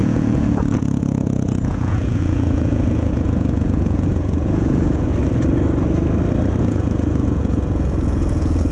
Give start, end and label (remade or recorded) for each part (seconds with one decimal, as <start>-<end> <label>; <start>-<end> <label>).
0.0-5.1 remade; 5.1-6.6 recorded; 6.6-8.7 remade